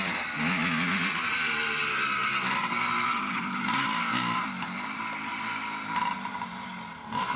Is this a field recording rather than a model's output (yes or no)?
yes